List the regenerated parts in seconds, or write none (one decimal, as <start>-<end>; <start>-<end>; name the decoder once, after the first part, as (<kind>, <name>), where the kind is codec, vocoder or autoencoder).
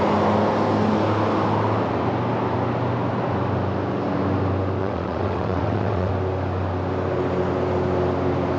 4.8-6.1 (vocoder, WaveNeXt)